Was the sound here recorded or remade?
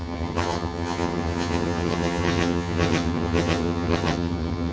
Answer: remade